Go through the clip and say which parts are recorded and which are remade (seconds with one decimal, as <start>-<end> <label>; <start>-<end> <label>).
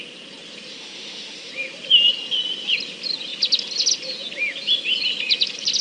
0.0-0.7 recorded; 0.7-1.5 remade; 1.5-5.8 recorded